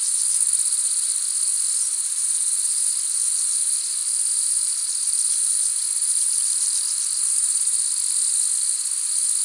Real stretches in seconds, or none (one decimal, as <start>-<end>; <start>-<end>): 0.0-9.4